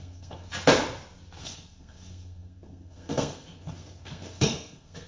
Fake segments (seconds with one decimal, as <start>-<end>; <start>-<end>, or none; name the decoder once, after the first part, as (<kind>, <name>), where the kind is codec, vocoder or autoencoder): 0.0-0.5 (codec, SNAC); 1.4-5.1